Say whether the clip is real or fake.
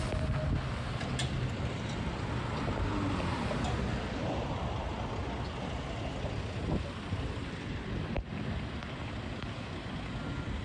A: real